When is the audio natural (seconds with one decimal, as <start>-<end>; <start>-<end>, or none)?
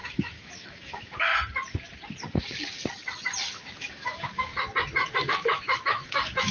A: 1.3-3.5; 4.5-5.2